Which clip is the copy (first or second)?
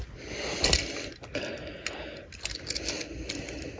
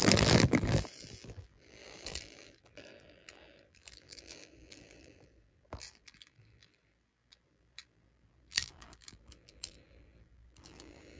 second